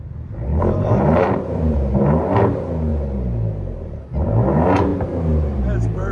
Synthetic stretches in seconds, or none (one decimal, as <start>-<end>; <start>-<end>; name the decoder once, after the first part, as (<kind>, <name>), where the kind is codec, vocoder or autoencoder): 0.5-2.0 (vocoder, BigVGAN v2); 4.9-5.6